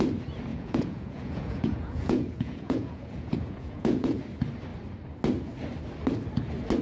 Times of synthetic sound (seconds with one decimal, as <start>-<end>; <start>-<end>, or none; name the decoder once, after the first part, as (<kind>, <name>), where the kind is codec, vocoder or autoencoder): 0.5-4.2 (vocoder, Vocos)